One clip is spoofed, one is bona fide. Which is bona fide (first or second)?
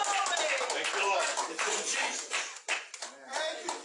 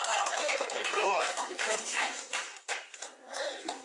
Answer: first